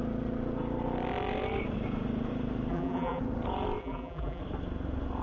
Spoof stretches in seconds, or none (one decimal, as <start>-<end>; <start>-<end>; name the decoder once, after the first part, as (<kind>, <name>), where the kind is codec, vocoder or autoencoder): 2.7-3.2 (vocoder, BigVGAN v2); 3.8-4.4